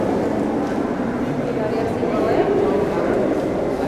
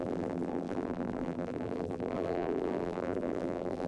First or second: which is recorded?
first